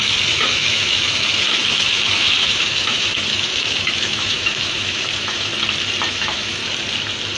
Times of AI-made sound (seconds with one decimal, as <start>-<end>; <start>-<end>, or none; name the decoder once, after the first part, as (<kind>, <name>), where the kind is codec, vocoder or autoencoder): 0.0-5.5 (autoencoder, DAC-VAE); 6.1-6.6